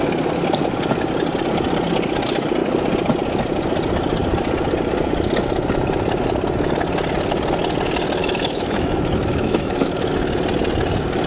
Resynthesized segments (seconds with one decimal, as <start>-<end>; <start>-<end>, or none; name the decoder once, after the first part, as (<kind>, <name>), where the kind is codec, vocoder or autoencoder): 8.2-10.1 (autoencoder, DAC-VAE)

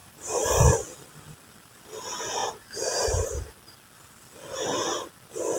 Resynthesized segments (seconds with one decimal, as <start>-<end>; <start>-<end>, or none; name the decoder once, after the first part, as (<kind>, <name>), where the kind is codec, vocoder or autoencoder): 0.0-0.7 (vocoder, BigVGAN v2); 2.4-3.4

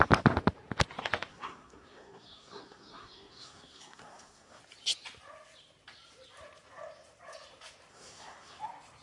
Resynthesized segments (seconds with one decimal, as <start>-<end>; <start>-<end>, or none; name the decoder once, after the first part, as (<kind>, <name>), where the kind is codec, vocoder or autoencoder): 1.3-4.6 (codec, SNAC); 7.9-8.6

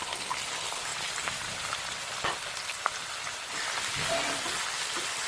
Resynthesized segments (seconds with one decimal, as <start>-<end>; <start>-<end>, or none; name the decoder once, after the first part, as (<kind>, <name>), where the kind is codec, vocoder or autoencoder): none